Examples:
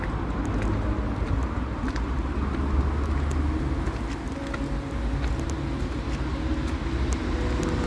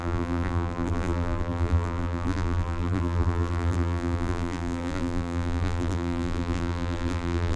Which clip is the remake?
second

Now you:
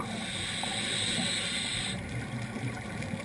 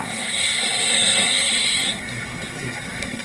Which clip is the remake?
second